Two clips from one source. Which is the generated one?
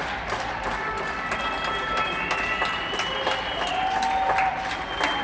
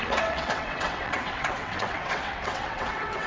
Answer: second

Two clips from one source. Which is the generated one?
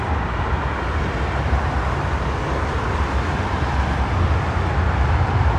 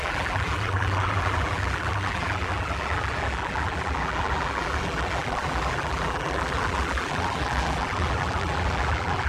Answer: second